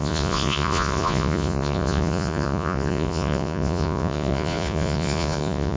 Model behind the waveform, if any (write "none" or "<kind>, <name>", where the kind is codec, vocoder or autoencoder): vocoder, Vocos